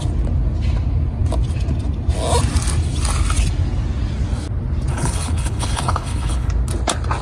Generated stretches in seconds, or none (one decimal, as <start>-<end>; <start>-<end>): 4.9-6.5